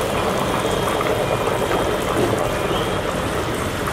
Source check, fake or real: real